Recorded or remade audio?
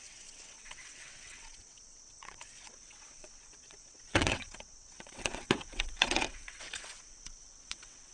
remade